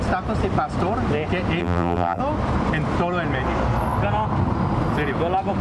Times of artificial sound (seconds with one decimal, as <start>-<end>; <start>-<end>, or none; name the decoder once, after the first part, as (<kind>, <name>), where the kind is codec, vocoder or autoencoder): 1.6-2.2 (vocoder, BigVGAN v2)